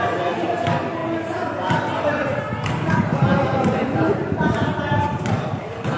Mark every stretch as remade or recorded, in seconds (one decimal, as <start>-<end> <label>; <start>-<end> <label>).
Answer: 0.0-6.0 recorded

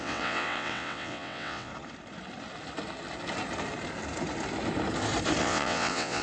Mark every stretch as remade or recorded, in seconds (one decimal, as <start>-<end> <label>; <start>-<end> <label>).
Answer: 0.0-1.7 remade; 1.7-5.4 recorded; 5.4-6.2 remade

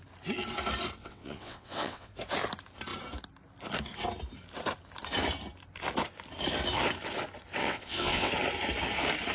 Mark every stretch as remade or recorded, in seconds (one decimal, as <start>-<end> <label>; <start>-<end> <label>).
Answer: 0.0-1.0 recorded; 1.0-2.1 remade; 2.1-7.6 recorded; 7.6-8.3 remade; 8.3-9.3 recorded

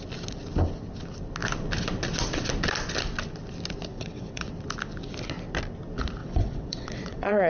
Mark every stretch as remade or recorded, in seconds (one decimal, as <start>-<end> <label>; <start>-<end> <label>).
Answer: 0.0-3.9 recorded; 3.9-4.5 remade; 4.5-6.2 recorded; 6.2-7.5 remade

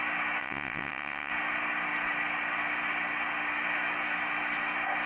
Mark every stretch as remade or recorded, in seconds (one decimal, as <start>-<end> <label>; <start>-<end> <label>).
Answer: 0.0-0.4 recorded; 0.4-1.3 remade; 1.3-5.1 recorded

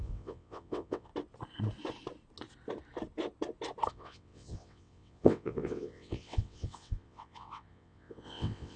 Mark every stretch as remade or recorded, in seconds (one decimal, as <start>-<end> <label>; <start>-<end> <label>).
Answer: 0.0-1.1 remade; 1.1-3.9 recorded; 3.9-8.8 remade

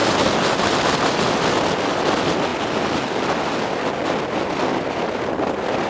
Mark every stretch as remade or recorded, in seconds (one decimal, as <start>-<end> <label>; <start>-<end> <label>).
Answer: 0.0-5.9 recorded